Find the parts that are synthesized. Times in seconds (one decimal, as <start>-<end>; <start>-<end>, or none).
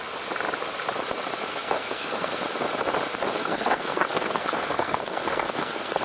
1.5-2.4; 3.4-6.0